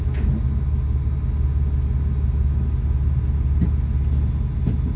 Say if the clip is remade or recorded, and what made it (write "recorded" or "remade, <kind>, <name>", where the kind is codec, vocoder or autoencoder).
recorded